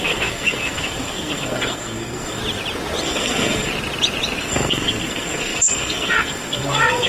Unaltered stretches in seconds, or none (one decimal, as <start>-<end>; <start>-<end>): 2.4-3.0; 3.7-4.4